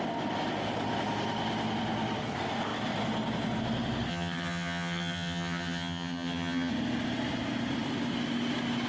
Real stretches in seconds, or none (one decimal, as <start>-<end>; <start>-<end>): 0.0-4.1; 6.7-8.9